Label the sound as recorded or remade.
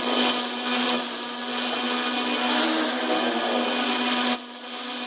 recorded